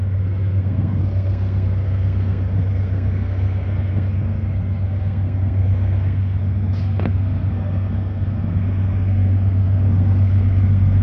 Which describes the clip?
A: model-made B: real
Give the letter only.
A